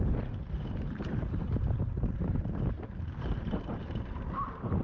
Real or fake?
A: fake